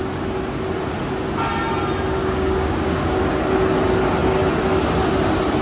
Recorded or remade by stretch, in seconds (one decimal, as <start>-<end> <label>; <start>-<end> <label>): 0.0-2.2 recorded; 2.2-3.2 remade; 3.2-5.6 recorded